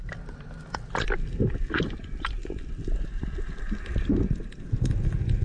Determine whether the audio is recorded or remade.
recorded